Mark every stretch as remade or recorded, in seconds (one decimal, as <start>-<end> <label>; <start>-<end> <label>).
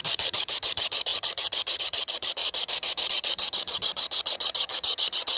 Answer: 0.0-2.4 remade; 2.4-3.1 recorded; 3.1-5.4 remade